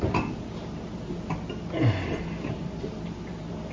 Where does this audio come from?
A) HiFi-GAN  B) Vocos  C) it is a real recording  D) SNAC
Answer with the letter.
C